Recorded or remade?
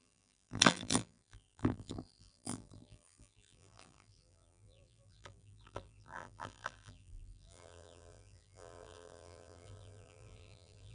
remade